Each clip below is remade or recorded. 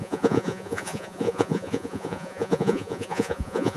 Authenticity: remade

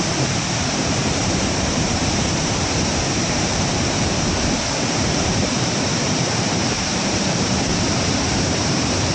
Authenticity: remade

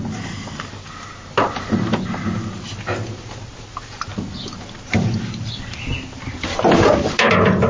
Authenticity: recorded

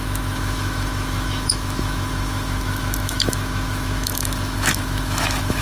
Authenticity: remade